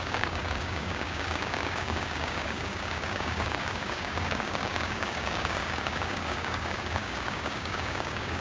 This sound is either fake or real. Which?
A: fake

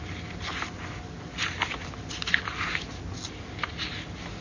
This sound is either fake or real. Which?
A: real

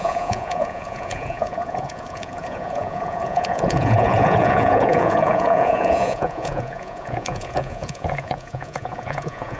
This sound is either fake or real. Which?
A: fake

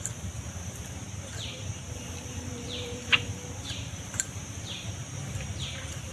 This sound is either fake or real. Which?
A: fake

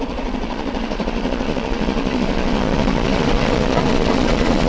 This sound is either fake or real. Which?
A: fake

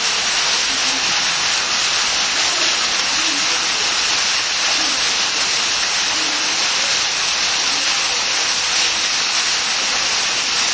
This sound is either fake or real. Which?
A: real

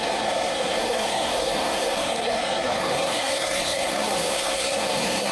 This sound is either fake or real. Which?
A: fake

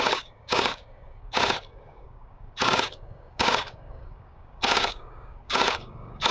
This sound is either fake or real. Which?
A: fake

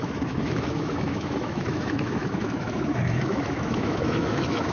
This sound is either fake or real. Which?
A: fake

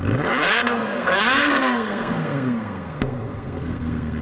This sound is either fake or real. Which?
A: fake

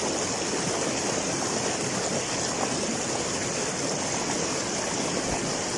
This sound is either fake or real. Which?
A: real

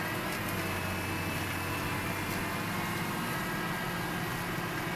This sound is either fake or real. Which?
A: real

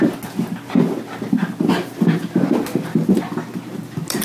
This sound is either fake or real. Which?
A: real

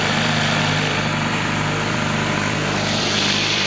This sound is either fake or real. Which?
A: fake